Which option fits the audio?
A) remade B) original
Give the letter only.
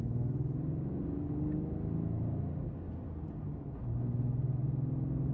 B